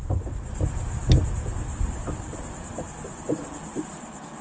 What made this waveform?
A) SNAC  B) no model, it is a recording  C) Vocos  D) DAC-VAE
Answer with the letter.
B